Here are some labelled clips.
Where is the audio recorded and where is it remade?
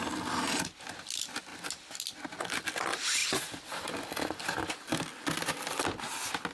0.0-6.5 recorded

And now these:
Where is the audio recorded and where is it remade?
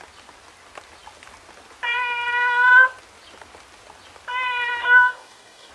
0.0-4.8 recorded; 4.8-5.7 remade